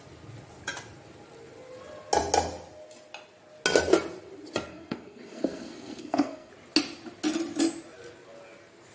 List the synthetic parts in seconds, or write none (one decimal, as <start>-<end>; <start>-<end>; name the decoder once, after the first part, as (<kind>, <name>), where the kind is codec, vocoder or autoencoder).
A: 4.7-6.5 (codec, SNAC)